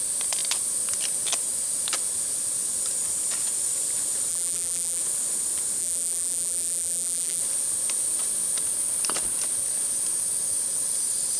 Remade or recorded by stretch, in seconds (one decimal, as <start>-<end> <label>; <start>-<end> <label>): 0.0-4.3 recorded; 4.3-5.0 remade; 5.0-5.8 recorded; 5.8-7.4 remade; 7.4-11.4 recorded